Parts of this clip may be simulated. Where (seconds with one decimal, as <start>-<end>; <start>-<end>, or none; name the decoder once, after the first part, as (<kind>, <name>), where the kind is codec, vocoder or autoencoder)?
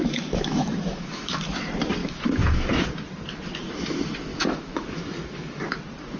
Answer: 0.0-1.4 (autoencoder, DAC-VAE); 2.0-2.8; 4.3-5.7